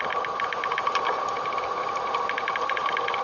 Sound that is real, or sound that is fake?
real